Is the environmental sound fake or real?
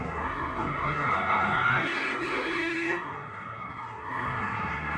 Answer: fake